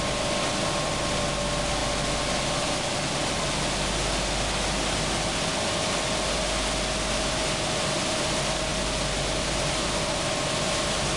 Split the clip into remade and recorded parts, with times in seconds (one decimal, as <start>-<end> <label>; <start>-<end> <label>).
0.0-11.2 recorded